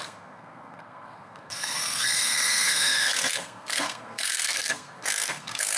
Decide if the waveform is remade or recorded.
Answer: remade